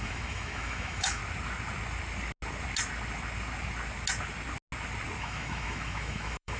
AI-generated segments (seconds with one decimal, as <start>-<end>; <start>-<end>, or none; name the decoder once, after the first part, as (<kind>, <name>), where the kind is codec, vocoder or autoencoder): 0.0-1.2 (autoencoder, DAC-VAE); 5.2-6.6